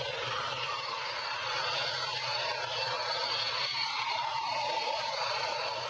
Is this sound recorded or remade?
recorded